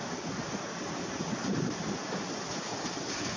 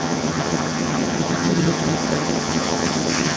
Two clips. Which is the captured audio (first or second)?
first